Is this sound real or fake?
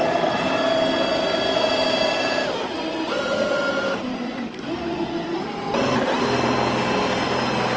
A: real